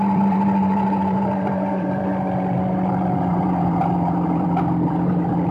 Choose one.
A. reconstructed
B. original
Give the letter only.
A